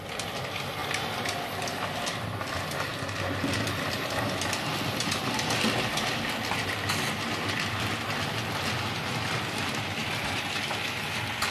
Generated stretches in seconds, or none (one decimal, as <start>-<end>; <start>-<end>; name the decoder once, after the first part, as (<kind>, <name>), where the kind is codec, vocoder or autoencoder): none